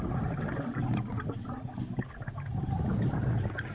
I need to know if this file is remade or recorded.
recorded